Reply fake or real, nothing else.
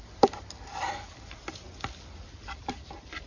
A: fake